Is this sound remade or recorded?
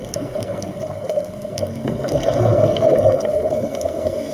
remade